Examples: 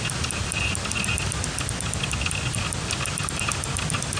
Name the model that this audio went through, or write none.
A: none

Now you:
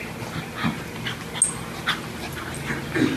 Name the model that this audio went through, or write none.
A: none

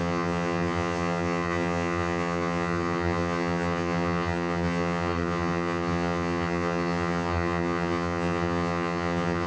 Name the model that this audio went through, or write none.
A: vocoder, HiFi-GAN